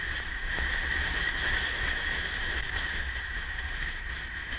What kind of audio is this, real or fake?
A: fake